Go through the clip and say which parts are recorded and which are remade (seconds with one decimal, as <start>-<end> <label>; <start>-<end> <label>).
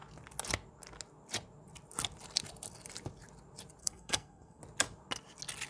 0.0-3.8 recorded; 3.8-4.6 remade; 4.6-5.7 recorded